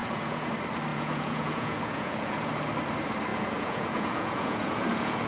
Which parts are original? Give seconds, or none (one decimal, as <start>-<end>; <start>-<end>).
0.5-0.9; 2.5-3.3